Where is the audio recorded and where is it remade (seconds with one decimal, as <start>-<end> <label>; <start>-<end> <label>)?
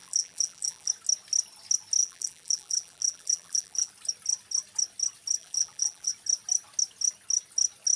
0.0-0.9 remade; 0.9-2.0 recorded; 2.0-3.9 remade; 3.9-5.4 recorded; 5.4-6.1 remade; 6.1-8.0 recorded